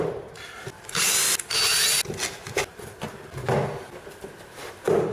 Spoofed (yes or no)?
no